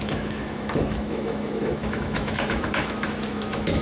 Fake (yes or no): yes